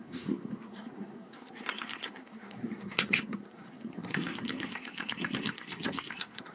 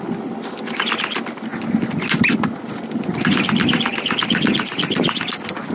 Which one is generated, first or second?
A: first